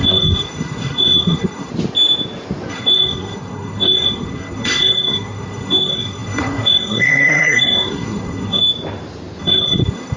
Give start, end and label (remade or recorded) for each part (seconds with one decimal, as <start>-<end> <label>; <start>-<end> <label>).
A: 0.0-1.7 remade; 1.7-2.7 recorded; 2.7-8.6 remade; 8.6-9.4 recorded; 9.4-10.2 remade